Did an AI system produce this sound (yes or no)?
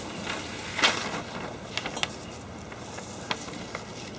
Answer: no